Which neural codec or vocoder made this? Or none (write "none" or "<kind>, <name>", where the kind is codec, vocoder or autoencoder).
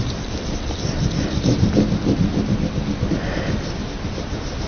none